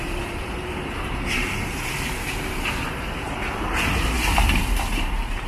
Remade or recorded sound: remade